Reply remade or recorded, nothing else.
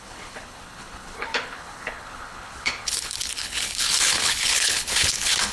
remade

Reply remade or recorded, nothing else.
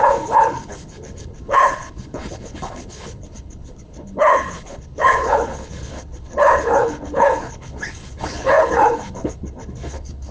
remade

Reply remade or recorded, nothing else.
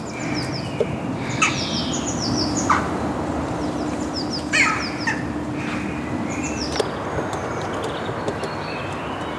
recorded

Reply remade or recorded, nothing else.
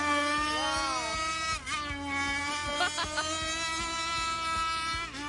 recorded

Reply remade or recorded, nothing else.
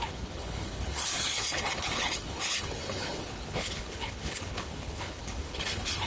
remade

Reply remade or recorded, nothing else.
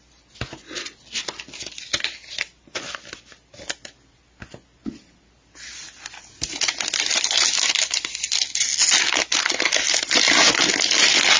recorded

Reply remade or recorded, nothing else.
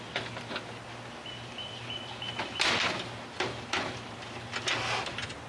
recorded